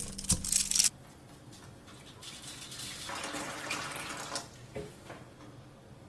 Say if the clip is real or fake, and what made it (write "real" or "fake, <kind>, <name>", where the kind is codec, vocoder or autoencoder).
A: real